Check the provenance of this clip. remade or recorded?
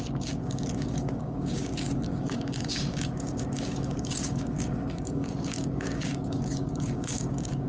remade